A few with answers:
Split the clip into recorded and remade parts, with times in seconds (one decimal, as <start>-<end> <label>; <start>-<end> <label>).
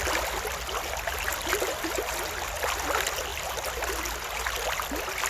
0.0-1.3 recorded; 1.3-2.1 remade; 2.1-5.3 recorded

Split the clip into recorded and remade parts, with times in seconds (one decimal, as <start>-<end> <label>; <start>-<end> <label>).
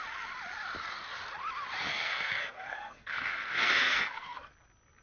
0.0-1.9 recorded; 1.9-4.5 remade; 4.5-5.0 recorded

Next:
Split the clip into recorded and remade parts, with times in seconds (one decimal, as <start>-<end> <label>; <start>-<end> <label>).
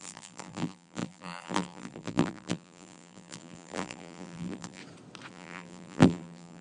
0.0-4.8 remade; 4.8-5.3 recorded; 5.3-6.6 remade